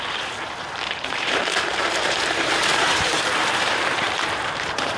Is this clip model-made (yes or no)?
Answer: yes